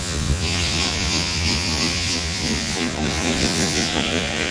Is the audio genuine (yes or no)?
no